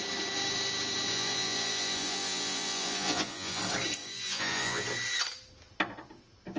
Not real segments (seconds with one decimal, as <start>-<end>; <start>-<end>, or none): 1.1-3.6; 4.0-4.8